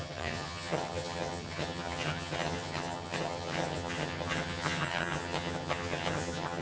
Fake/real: fake